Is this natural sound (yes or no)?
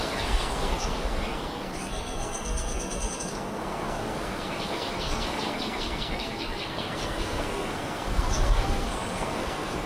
no